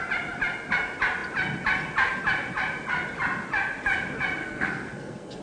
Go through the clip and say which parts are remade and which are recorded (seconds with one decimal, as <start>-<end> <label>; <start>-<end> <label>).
0.0-4.4 recorded; 4.4-5.4 remade